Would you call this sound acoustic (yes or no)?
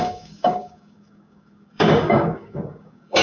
no